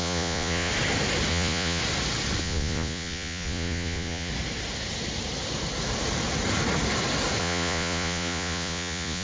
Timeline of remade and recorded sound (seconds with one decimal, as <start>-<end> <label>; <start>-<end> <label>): 0.0-0.7 remade; 0.7-1.3 recorded; 1.3-1.8 remade; 1.8-2.4 recorded; 2.4-4.3 remade; 4.3-7.4 recorded; 7.4-9.2 remade